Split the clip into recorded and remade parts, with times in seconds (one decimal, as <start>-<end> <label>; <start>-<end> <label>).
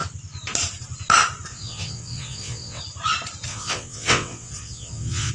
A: 0.0-1.5 recorded; 1.5-2.8 remade; 2.8-3.5 recorded; 3.5-5.3 remade